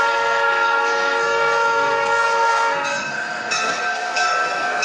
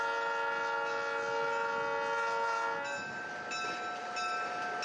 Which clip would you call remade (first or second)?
first